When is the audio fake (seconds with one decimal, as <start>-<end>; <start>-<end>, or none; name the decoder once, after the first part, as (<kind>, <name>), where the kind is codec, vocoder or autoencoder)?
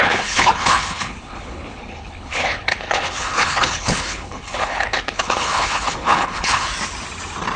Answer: 0.0-6.7 (codec, HILCodec)